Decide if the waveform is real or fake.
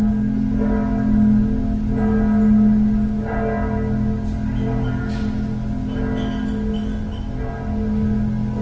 real